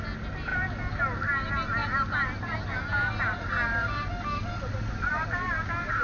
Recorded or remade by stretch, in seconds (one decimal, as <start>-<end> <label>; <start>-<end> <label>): 0.0-6.0 recorded